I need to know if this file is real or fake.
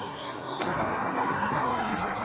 fake